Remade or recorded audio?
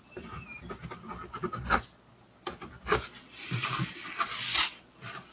recorded